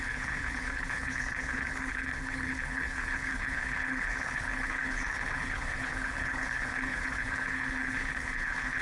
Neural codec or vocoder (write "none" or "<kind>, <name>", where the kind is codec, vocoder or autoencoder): codec, HILCodec